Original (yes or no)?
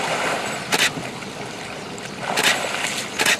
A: no